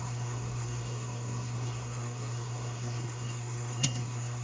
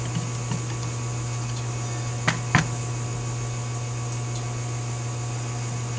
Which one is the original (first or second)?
second